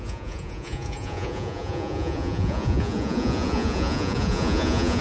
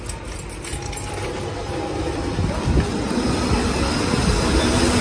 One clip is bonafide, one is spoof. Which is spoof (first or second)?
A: first